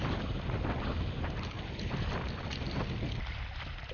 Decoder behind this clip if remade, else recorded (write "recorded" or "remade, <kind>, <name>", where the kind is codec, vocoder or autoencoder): recorded